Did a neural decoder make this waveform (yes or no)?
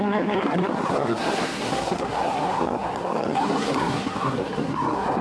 yes